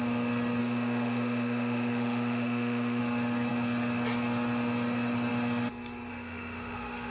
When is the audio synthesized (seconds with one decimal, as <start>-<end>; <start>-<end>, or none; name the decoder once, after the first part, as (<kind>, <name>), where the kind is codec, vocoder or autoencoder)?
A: 0.6-3.0 (autoencoder, DAC-VAE); 6.1-7.1